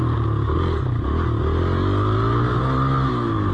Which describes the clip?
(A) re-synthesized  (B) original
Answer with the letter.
B